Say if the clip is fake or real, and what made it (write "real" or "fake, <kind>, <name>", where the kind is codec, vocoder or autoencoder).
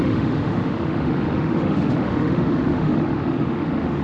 fake, autoencoder, DAC-VAE